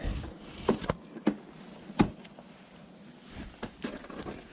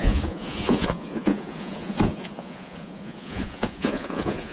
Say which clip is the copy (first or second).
second